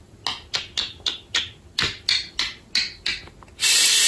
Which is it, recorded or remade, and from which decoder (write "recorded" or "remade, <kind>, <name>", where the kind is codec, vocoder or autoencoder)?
recorded